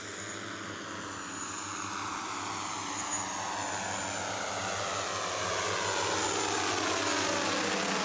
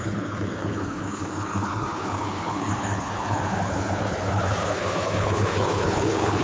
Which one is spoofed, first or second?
second